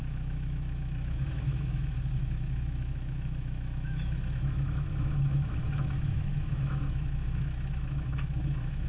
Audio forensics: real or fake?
fake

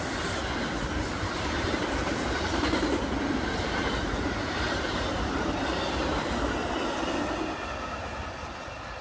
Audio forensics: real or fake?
real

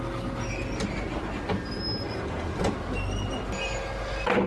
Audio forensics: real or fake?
real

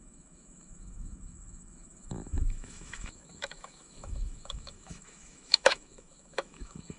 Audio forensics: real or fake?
fake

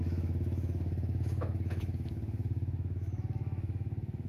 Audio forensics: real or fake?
fake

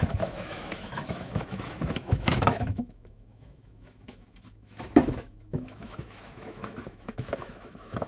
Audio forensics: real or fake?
fake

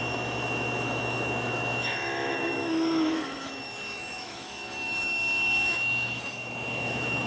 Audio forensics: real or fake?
fake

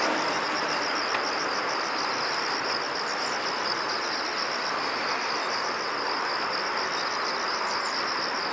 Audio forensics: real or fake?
real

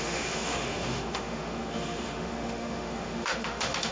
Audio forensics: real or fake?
fake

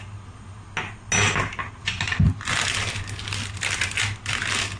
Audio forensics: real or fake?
real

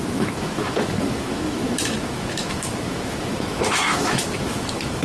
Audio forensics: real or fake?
fake